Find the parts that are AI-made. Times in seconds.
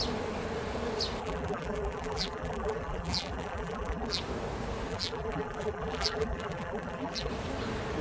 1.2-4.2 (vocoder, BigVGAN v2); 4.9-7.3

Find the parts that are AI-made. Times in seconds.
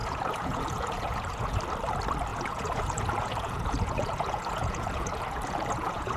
0.0-1.6 (vocoder, Vocos); 2.3-6.2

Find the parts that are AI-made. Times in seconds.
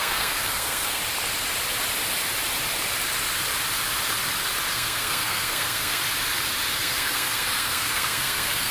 0.0-1.0 (codec, SNAC); 4.7-6.0; 6.7-8.7